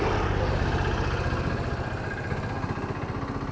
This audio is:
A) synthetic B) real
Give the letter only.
B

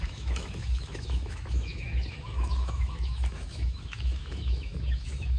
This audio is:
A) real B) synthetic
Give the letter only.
B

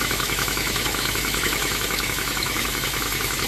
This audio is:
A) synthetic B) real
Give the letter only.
A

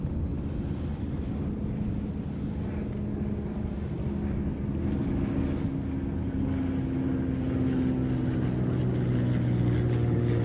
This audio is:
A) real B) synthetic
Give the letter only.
A